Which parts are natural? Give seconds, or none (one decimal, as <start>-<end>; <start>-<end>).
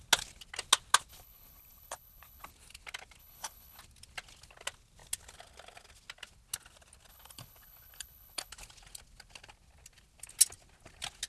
0.0-1.1; 2.5-3.2; 3.8-7.1; 8.5-11.3